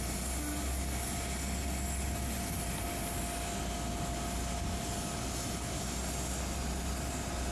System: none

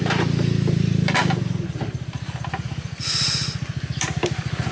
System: none